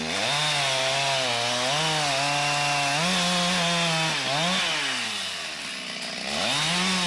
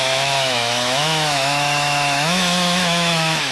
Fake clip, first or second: second